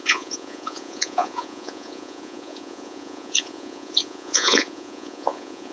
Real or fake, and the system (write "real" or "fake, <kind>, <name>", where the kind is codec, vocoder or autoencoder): fake, vocoder, Vocos